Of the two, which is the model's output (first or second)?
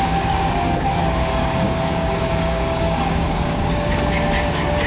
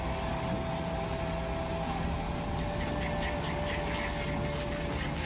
first